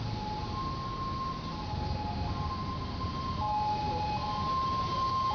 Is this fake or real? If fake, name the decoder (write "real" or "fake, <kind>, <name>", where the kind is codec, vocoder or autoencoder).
real